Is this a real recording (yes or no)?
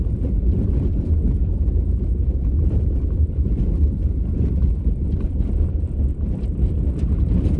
yes